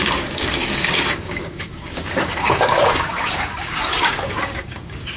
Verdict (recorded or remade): remade